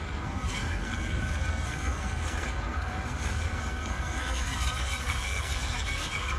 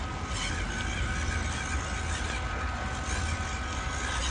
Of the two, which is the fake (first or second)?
first